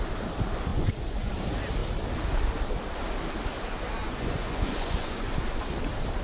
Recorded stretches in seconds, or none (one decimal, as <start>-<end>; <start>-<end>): 0.0-0.7; 1.3-4.0; 5.3-6.2

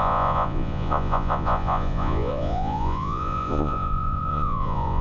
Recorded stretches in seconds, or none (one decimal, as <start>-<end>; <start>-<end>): none

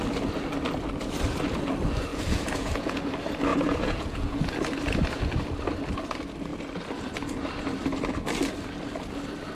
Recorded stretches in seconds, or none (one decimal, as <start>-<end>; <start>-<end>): 0.0-2.1; 3.0-3.5; 4.4-9.5

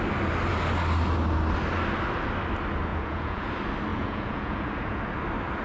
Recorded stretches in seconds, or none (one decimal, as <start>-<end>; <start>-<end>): 0.0-2.9; 3.5-3.9; 5.0-5.6